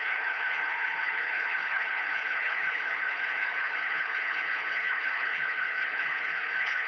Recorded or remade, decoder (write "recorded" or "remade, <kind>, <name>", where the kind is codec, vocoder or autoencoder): remade, codec, HILCodec